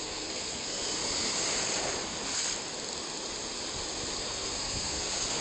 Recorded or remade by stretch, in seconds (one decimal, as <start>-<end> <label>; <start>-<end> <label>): 0.0-1.0 remade; 1.0-4.2 recorded; 4.2-5.4 remade